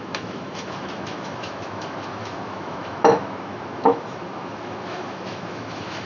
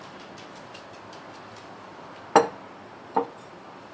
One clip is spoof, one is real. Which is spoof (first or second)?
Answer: first